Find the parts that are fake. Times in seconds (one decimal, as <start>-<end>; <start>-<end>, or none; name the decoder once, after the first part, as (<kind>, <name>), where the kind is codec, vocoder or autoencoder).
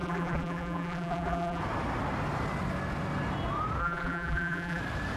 0.0-1.6 (vocoder, BigVGAN v2); 3.8-4.8